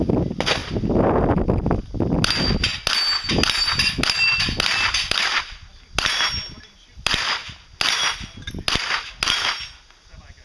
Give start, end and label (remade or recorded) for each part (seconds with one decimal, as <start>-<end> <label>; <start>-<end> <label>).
0.0-10.4 recorded